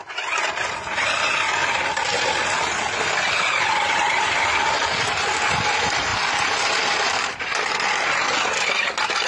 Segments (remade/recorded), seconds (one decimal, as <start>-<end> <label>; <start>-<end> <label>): 0.0-9.3 recorded